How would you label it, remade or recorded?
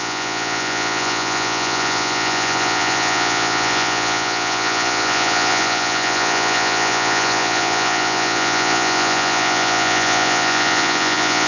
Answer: remade